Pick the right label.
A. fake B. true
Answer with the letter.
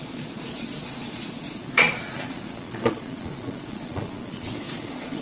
A